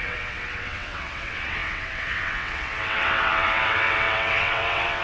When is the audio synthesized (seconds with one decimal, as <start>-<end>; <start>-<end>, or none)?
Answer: 0.0-5.0